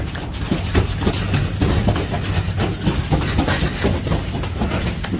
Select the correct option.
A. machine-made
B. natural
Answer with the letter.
B